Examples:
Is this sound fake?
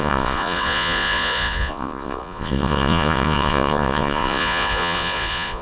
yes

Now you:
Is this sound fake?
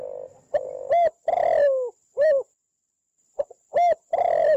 no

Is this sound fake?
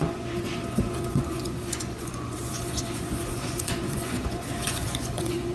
yes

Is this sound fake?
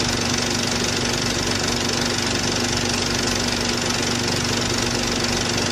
no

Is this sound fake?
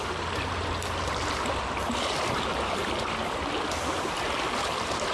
no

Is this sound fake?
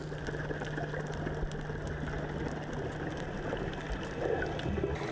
no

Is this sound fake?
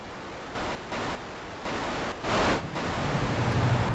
no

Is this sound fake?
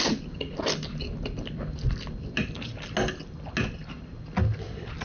no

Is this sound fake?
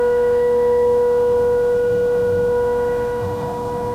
yes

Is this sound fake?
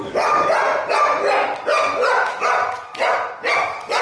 no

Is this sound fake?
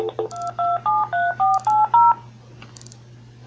no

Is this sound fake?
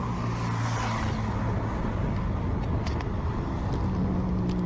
no